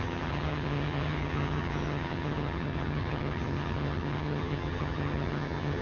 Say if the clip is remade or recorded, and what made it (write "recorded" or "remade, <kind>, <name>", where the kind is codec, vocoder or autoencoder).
remade, vocoder, HiFi-GAN